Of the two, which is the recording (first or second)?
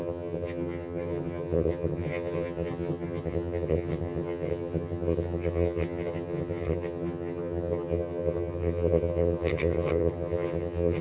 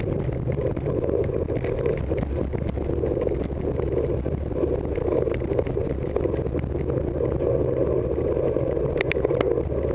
second